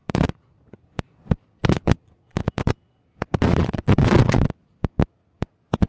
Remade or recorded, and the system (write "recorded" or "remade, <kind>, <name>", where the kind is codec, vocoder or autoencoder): remade, vocoder, Vocos